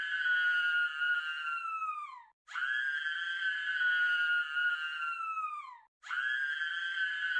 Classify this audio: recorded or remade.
recorded